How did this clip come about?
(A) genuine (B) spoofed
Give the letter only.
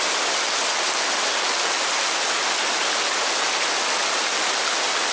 A